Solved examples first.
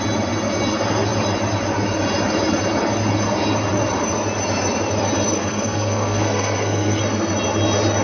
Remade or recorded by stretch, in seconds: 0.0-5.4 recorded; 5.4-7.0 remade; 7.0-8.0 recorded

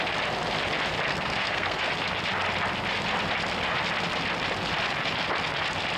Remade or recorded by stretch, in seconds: 0.0-1.1 recorded; 1.1-1.8 remade; 1.8-6.0 recorded

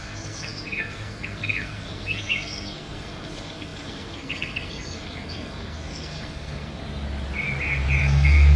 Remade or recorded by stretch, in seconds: 0.0-6.8 remade; 6.8-8.0 recorded; 8.0-8.6 remade

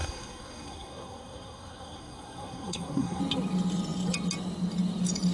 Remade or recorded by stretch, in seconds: 0.0-3.2 remade; 3.2-5.3 recorded

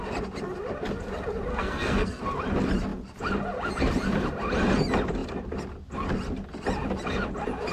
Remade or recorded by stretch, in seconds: 0.0-1.5 recorded; 1.5-2.2 remade; 2.2-7.7 recorded

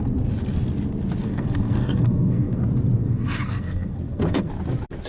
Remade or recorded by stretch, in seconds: 0.0-1.2 recorded; 1.2-2.6 remade; 2.6-3.0 recorded; 3.0-4.5 remade; 4.5-5.1 recorded

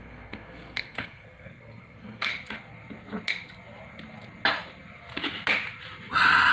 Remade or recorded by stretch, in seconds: 0.0-2.3 remade; 2.3-6.5 recorded